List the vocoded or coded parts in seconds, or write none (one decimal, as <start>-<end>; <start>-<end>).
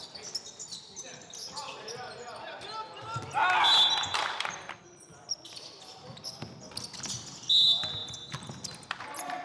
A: 1.1-1.9; 4.1-4.7